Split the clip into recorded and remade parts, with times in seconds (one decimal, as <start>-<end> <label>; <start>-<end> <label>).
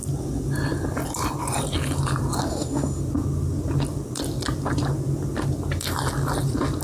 0.0-2.5 recorded; 2.5-3.0 remade; 3.0-6.8 recorded